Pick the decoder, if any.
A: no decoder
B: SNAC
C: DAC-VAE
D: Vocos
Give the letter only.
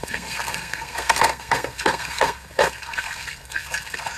B